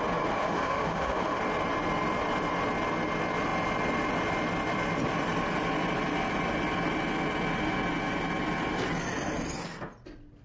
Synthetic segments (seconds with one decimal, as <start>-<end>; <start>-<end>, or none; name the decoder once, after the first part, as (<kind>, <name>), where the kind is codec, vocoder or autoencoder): 0.4-1.4 (autoencoder, DAC-VAE)